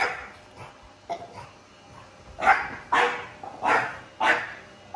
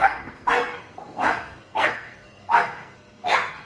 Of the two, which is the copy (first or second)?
second